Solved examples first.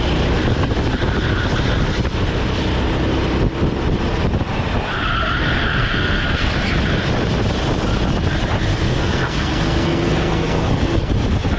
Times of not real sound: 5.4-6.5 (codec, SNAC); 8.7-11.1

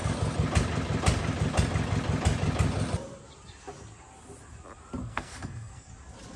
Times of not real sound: 5.0-5.9 (codec, SNAC)

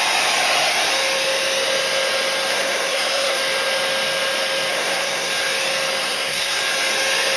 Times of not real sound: 2.5-3.4 (codec, SNAC); 4.7-5.3; 6.0-6.6

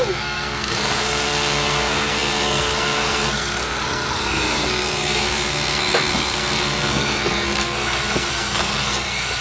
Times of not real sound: 0.0-9.4 (codec, SNAC)

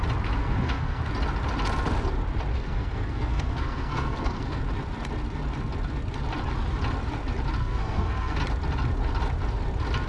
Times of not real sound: 0.4-1.0 (codec, SNAC); 2.5-4.6; 7.6-8.4

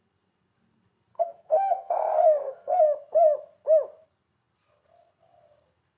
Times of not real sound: 1.1-2.8 (codec, SNAC)